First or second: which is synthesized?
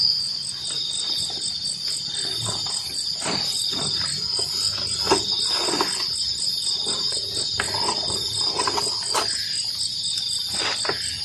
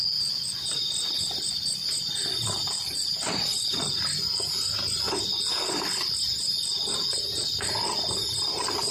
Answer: second